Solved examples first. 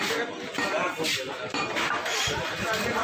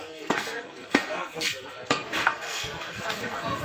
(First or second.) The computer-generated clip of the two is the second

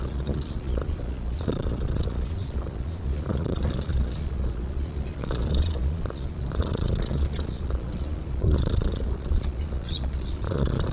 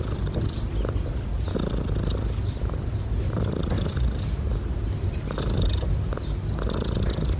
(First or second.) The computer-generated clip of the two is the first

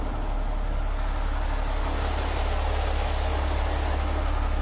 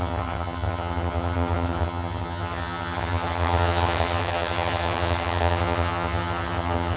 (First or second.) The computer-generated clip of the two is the second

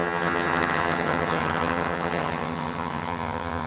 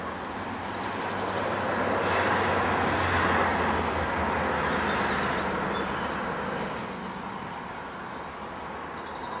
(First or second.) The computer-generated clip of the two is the first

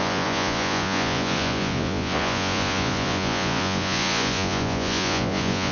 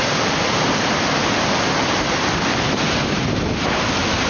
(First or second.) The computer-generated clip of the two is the first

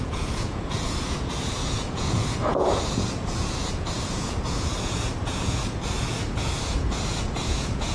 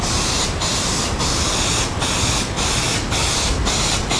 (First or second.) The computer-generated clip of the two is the first